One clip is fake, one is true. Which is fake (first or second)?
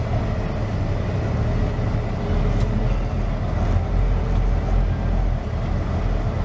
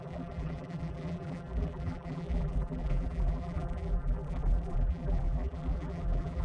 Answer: second